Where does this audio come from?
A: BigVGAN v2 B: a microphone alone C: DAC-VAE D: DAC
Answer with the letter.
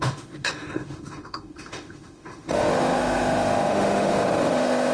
C